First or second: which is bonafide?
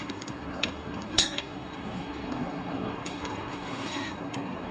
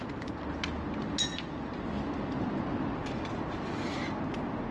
second